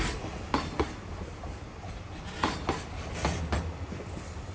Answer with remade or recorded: recorded